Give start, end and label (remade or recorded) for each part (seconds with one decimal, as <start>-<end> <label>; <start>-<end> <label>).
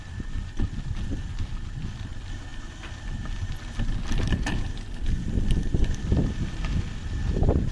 0.0-7.7 recorded